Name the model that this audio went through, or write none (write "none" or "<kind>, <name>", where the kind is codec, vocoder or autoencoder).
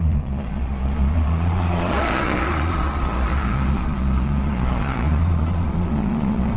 vocoder, Vocos